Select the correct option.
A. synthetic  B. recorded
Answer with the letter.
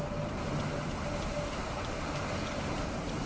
A